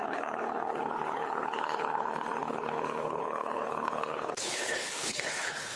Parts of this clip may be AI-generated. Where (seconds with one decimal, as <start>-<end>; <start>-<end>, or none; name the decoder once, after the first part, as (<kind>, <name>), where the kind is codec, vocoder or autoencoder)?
0.0-5.8 (codec, HILCodec)